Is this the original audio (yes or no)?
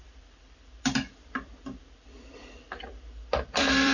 no